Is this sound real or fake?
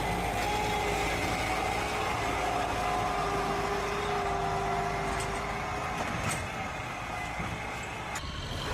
real